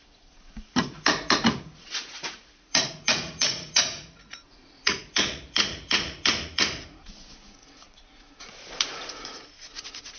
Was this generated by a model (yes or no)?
yes